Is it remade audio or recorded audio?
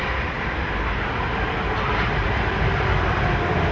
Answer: recorded